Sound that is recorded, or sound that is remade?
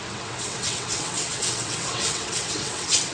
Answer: remade